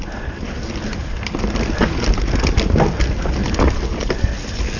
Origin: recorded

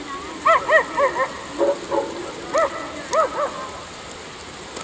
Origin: recorded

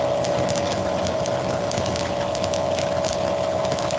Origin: recorded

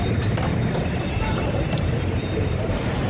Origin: remade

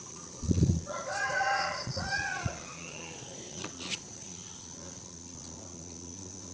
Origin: remade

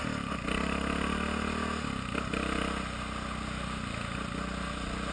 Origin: recorded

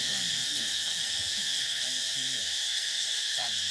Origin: remade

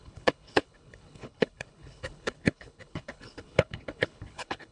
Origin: remade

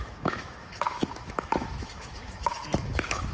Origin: remade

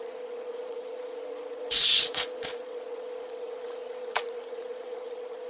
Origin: remade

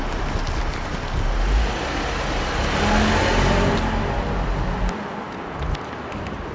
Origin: recorded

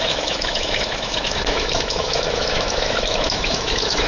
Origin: remade